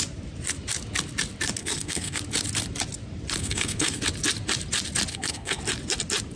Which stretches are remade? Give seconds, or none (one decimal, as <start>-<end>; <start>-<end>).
1.6-2.2; 3.4-4.0; 5.1-5.6